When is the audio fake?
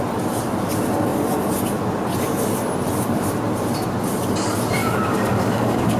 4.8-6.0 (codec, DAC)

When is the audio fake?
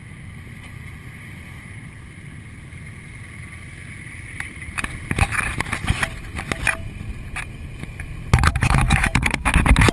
8.5-9.5 (autoencoder, DAC-VAE)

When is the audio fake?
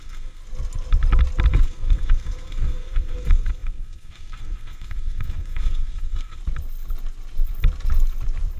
0.0-0.4 (codec, SNAC); 1.5-6.4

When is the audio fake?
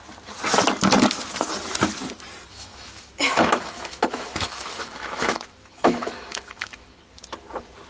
2.5-7.0 (autoencoder, DAC-VAE)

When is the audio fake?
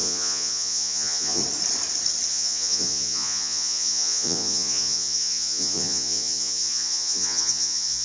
0.0-1.4 (vocoder, Vocos); 2.3-8.0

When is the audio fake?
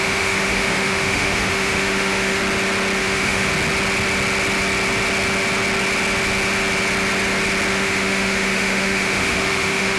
0.0-2.4 (autoencoder, DAC-VAE); 3.0-3.5; 7.7-10.0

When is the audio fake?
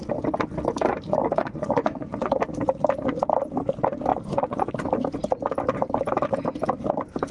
1.4-2.4 (vocoder, Vocos); 4.1-4.7